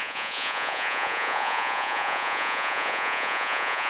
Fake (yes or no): yes